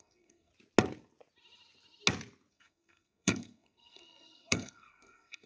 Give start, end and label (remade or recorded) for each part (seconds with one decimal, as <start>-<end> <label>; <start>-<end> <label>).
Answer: 0.0-0.5 remade; 0.5-2.5 recorded; 2.5-5.5 remade